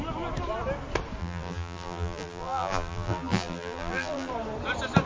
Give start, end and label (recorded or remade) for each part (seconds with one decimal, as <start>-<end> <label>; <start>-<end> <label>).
0.0-1.2 recorded; 1.2-4.3 remade; 4.3-5.1 recorded

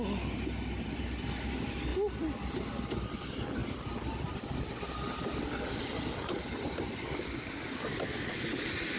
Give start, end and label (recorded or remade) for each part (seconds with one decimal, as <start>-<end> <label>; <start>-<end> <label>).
0.0-1.9 recorded; 1.9-2.7 remade; 2.7-3.6 recorded; 3.6-8.4 remade; 8.4-9.0 recorded

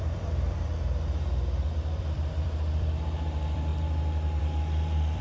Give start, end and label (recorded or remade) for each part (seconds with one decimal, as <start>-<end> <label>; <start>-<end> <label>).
0.0-0.7 remade; 0.7-2.0 recorded; 2.0-3.7 remade; 3.7-4.4 recorded; 4.4-5.2 remade

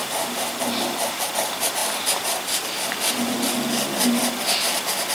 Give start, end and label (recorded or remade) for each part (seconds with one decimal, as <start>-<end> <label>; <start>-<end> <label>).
0.0-0.6 remade; 0.6-5.1 recorded

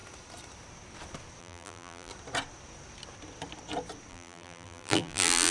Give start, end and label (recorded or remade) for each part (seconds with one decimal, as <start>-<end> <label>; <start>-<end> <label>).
0.0-1.4 recorded; 1.4-2.1 remade; 2.1-4.1 recorded; 4.1-5.5 remade